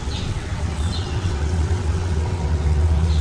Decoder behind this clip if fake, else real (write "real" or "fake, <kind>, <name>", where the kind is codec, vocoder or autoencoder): fake, vocoder, WaveNeXt